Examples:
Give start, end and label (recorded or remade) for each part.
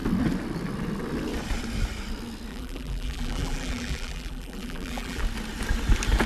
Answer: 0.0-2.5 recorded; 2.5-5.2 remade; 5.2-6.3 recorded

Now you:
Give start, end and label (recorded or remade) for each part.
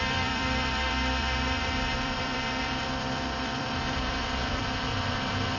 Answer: 0.0-5.6 remade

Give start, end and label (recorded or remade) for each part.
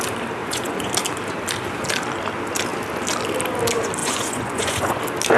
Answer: 0.0-0.4 recorded; 0.4-0.9 remade; 0.9-4.0 recorded; 4.0-5.0 remade; 5.0-5.4 recorded